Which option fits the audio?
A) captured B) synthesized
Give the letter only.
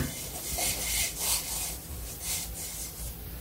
A